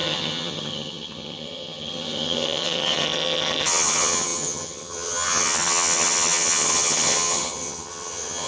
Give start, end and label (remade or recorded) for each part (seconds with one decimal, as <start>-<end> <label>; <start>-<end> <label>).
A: 0.0-8.5 remade